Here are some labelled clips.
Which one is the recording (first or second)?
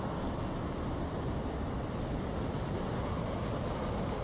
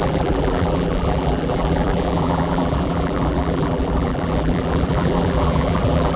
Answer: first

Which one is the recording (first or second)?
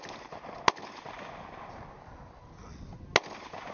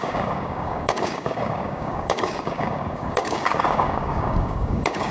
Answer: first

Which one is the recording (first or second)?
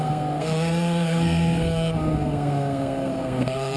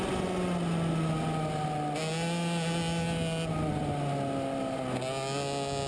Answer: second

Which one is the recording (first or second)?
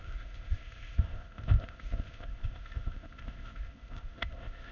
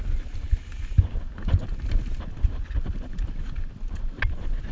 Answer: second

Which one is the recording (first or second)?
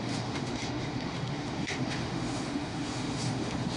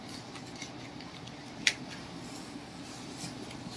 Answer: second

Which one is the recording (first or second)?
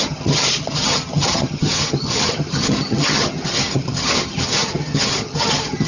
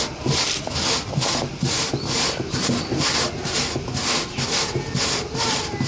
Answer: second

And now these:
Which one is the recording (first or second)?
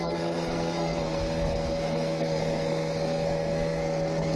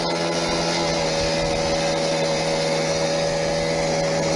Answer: second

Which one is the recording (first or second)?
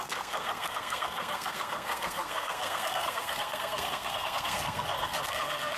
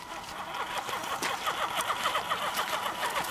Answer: second